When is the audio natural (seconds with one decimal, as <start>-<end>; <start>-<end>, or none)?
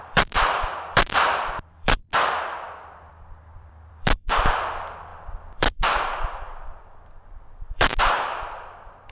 2.0-3.1